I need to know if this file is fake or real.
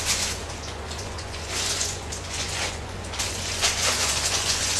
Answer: fake